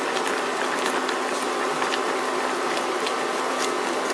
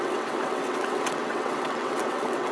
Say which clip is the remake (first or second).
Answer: second